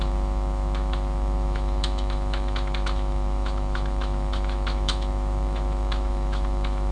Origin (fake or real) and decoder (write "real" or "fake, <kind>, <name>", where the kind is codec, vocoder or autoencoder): fake, autoencoder, DAC-VAE